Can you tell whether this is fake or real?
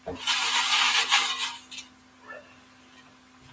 real